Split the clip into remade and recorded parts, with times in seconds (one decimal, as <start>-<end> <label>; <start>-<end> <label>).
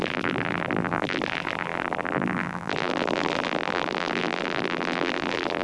0.0-5.6 remade